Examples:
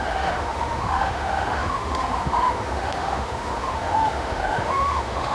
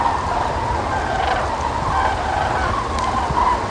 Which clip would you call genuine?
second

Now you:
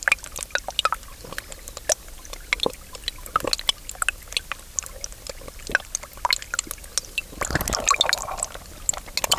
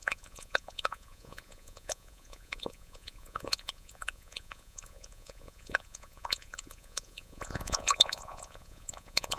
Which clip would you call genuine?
first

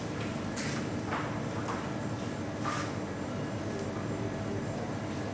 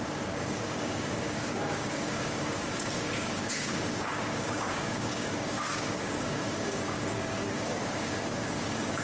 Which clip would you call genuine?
first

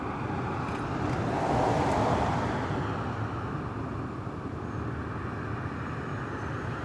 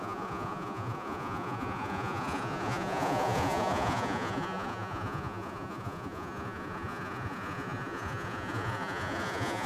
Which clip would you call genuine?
first